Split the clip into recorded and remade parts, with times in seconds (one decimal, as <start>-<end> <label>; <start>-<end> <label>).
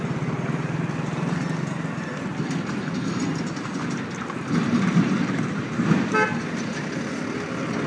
0.0-7.9 recorded